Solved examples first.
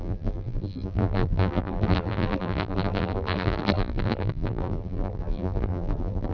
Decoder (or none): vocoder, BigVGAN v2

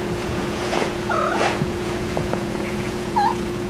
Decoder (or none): vocoder, Vocos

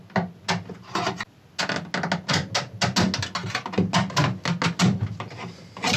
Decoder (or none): none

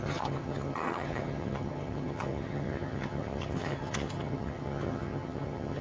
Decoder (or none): vocoder, HiFi-GAN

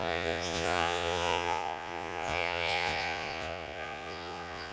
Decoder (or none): vocoder, Vocos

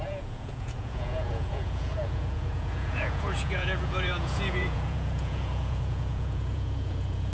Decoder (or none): vocoder, Vocos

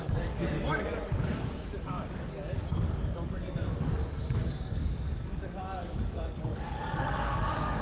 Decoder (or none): codec, DAC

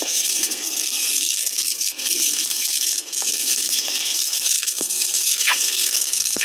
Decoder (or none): codec, SNAC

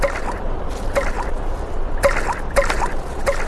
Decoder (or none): none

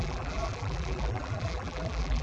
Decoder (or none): vocoder, BigVGAN v2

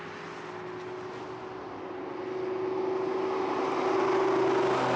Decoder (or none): none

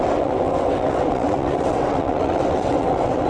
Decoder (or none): vocoder, WaveNeXt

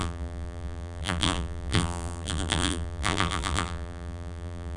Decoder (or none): vocoder, BigVGAN v2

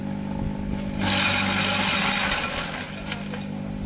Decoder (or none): none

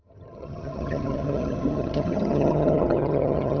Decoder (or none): vocoder, HiFi-GAN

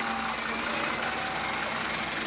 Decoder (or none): none